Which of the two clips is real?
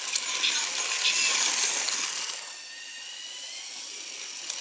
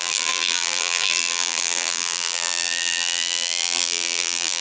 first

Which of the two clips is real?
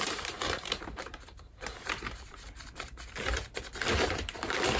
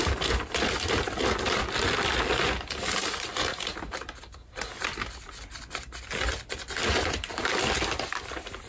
second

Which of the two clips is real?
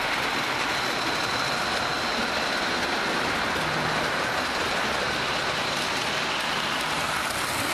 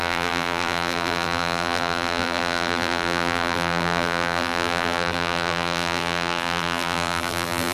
first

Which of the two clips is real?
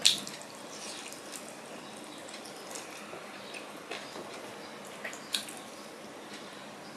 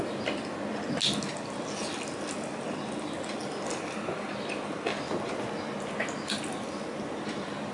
second